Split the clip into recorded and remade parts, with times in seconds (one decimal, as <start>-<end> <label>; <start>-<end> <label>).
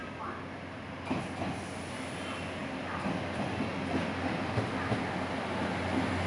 0.0-6.3 recorded